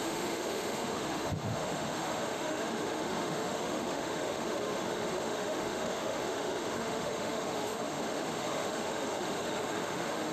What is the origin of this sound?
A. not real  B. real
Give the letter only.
A